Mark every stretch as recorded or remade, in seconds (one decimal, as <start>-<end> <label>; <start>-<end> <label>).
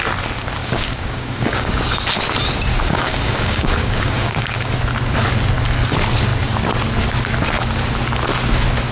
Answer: 0.0-0.6 recorded; 0.6-2.0 remade; 2.0-2.7 recorded; 2.7-4.7 remade; 4.7-8.9 recorded